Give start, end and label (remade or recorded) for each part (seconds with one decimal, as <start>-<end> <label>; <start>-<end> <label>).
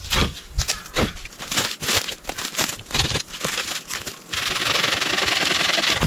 0.0-4.6 recorded; 4.6-5.1 remade; 5.1-6.1 recorded